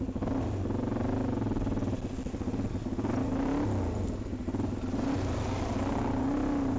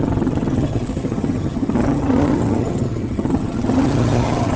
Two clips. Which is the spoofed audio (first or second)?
second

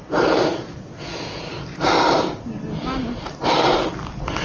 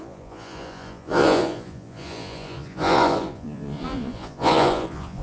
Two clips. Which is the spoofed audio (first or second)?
second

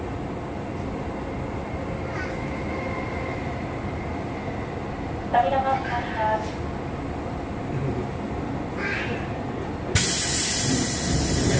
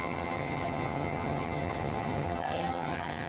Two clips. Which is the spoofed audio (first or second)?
second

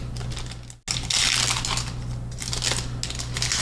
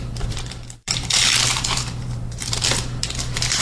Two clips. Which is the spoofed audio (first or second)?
second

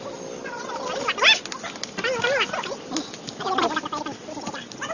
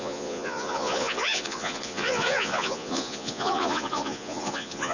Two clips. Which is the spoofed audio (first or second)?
second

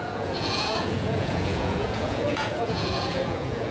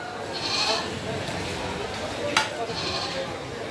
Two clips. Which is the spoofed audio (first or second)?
first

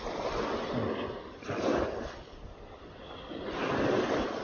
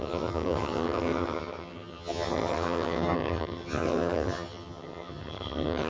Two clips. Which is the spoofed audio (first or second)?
second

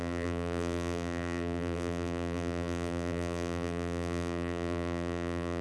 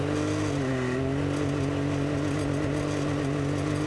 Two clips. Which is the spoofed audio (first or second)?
first